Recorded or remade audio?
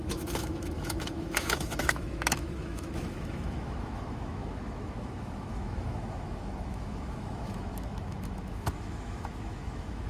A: remade